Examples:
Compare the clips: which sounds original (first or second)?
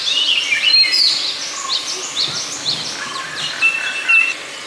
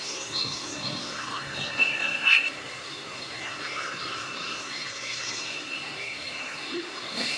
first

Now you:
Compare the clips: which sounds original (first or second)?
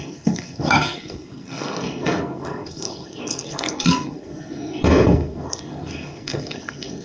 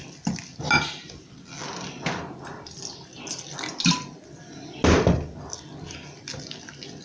second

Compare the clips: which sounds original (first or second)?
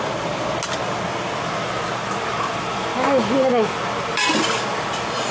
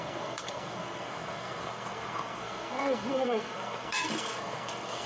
first